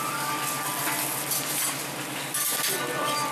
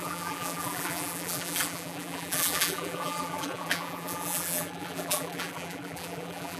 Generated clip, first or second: second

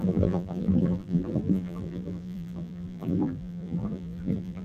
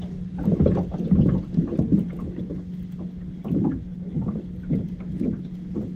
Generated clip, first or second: first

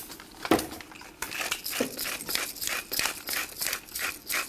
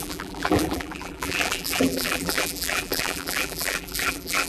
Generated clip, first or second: second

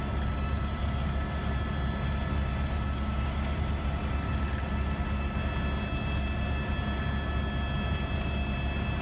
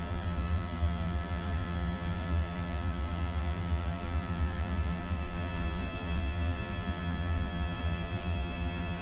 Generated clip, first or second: second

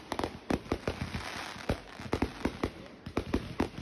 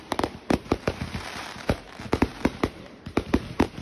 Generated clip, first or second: second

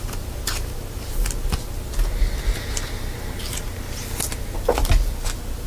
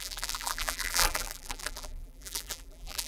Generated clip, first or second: second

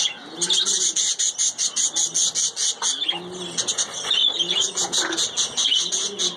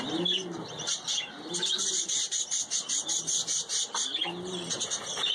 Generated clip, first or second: second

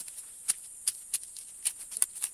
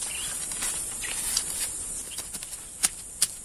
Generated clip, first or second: second